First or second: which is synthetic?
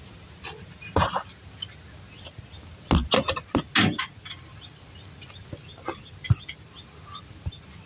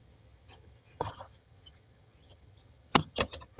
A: second